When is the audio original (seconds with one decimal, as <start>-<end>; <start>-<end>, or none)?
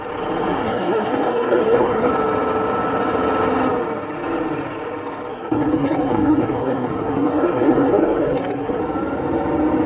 0.0-0.5; 2.1-5.3; 8.8-9.9